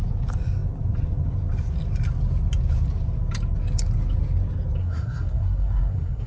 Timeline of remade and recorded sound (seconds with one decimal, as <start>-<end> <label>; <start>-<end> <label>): 0.0-4.8 recorded; 4.8-6.3 remade